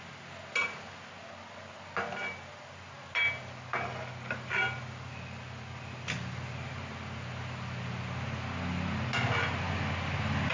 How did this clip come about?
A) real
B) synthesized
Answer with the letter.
A